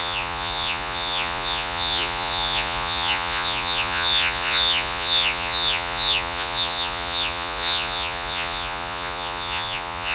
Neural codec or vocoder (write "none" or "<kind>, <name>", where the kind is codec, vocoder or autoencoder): vocoder, Vocos